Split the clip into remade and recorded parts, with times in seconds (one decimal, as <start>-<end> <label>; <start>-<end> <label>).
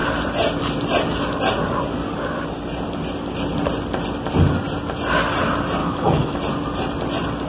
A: 0.0-5.8 recorded; 5.8-6.4 remade; 6.4-7.5 recorded